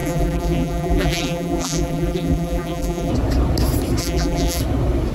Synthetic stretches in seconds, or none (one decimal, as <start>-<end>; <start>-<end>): 0.0-3.1; 4.0-4.6